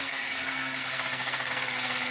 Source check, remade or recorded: remade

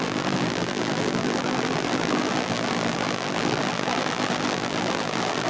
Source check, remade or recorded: remade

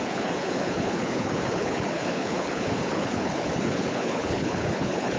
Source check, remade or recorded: remade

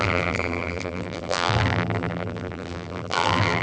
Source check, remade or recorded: remade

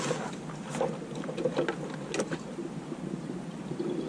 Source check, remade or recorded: recorded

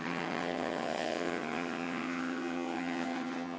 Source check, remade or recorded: remade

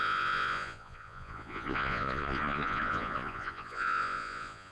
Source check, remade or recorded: remade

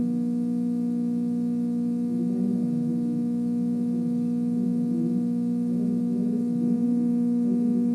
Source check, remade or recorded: recorded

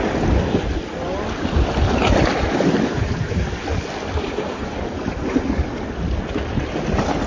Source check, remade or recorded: recorded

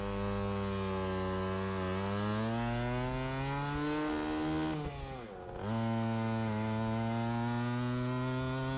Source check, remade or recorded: recorded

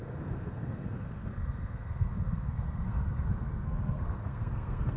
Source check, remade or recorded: remade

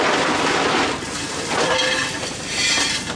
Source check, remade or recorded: recorded